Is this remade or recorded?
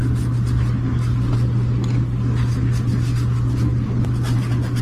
recorded